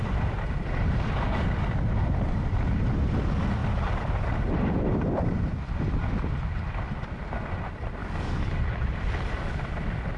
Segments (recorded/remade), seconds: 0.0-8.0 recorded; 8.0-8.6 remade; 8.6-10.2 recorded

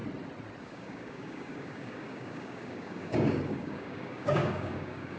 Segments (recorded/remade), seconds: 0.0-0.6 recorded; 0.6-5.2 remade

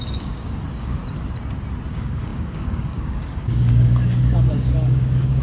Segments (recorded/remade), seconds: 0.0-1.0 remade; 1.0-1.9 recorded; 1.9-5.4 remade

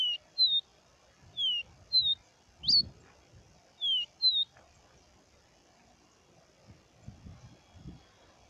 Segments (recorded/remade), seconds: 0.0-8.5 recorded

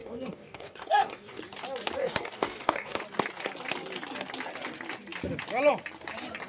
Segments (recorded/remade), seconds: 0.0-1.4 remade; 1.4-2.0 recorded; 2.0-3.0 remade; 3.0-6.5 recorded

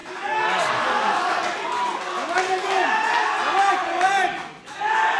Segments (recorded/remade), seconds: 0.0-1.4 remade; 1.4-5.2 recorded

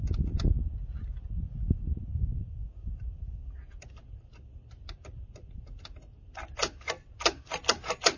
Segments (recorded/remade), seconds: 0.0-8.2 recorded

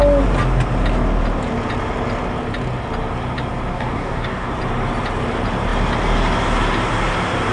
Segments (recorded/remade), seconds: 0.0-3.7 recorded; 3.7-4.5 remade; 4.5-7.5 recorded